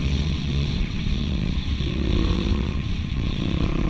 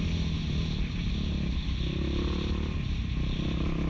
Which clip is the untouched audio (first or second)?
second